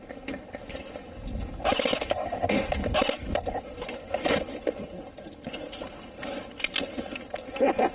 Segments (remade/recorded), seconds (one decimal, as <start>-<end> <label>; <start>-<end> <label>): 0.0-7.9 recorded